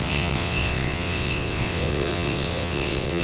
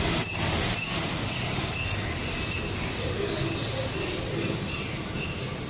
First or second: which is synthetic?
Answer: first